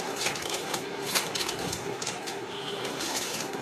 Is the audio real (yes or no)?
no